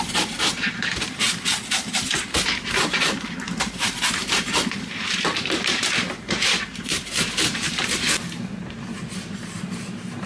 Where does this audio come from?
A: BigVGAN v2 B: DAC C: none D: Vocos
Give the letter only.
A